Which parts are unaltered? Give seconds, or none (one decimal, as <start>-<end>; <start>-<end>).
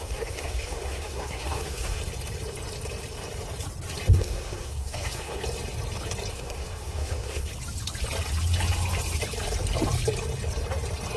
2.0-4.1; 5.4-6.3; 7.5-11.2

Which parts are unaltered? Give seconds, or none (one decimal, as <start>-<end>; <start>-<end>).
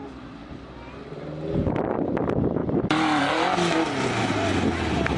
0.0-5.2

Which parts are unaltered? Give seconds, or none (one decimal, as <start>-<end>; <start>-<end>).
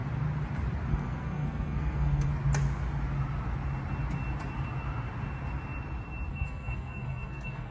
0.0-0.9; 2.3-6.3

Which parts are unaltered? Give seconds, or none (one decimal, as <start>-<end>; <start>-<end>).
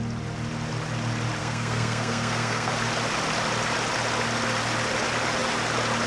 0.0-1.4; 2.7-6.1